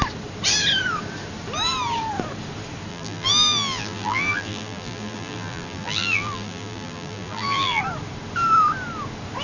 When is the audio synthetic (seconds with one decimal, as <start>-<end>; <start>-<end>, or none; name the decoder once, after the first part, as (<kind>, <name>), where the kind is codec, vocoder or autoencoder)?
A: 2.9-7.8 (vocoder, BigVGAN v2)